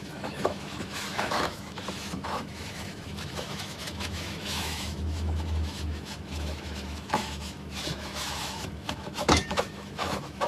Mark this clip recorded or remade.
remade